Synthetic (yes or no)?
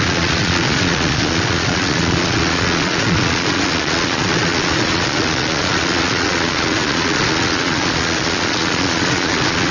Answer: yes